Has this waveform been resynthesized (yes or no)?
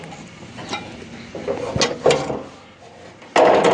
no